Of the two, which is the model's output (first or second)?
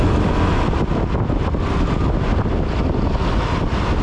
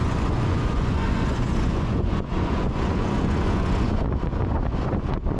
second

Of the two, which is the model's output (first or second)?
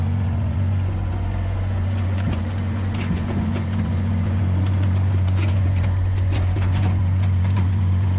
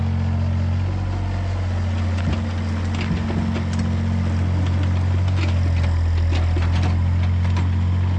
first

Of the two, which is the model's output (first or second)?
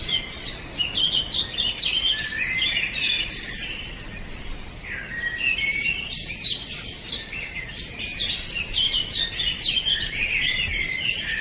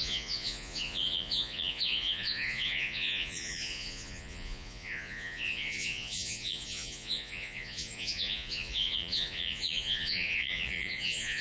second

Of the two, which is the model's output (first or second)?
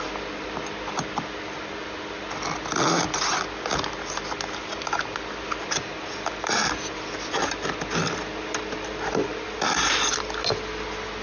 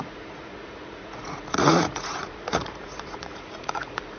second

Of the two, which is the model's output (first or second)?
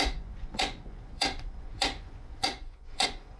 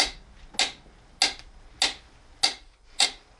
first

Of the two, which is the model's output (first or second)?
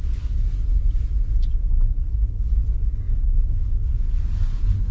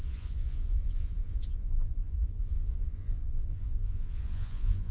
second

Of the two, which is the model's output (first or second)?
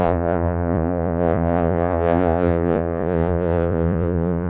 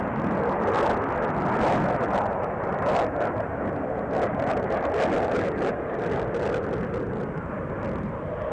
first